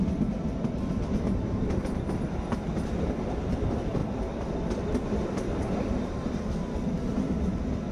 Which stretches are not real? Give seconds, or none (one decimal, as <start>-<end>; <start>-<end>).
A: none